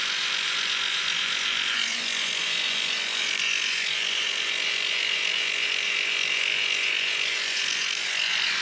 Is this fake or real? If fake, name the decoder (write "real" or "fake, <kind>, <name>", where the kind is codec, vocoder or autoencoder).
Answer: fake, vocoder, Vocos